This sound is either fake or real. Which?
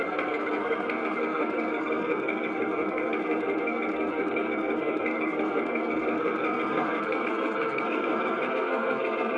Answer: fake